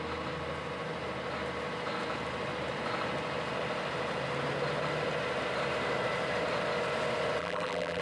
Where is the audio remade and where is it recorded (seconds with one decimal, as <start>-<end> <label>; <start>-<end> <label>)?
0.0-7.4 recorded; 7.4-8.0 remade